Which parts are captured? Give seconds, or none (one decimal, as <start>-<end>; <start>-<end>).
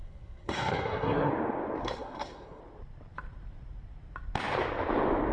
1.3-1.8; 2.6-5.3